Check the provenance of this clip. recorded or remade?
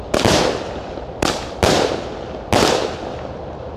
recorded